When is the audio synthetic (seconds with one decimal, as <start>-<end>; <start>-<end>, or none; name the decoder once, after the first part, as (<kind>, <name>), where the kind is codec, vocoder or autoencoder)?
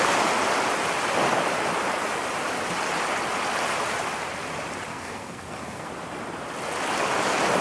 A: 4.9-5.9 (codec, SNAC)